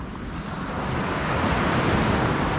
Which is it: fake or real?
real